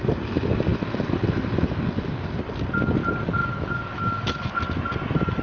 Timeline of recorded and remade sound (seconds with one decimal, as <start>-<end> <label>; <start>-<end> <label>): 0.0-3.4 recorded; 3.4-4.5 remade; 4.5-5.4 recorded